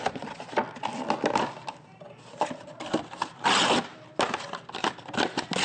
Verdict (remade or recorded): recorded